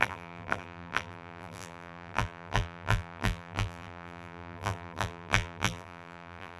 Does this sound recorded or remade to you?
remade